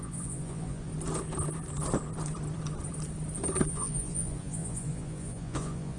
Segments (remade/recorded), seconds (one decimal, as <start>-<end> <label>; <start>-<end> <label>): 0.0-0.9 remade; 0.9-3.7 recorded; 3.7-6.0 remade